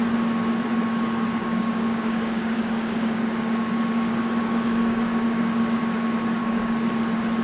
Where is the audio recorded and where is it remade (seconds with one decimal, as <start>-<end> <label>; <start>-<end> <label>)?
0.0-1.4 recorded; 1.4-5.8 remade; 5.8-6.4 recorded; 6.4-6.9 remade; 6.9-7.4 recorded